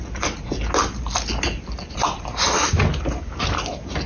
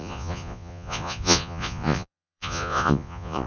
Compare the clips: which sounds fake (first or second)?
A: second